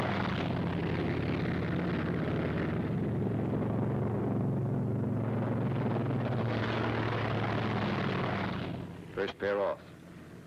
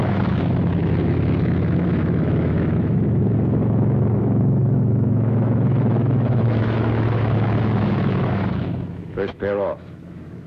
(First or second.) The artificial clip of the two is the second